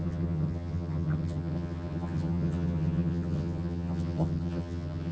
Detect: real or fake fake